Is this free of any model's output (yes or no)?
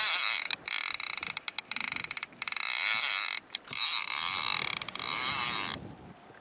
yes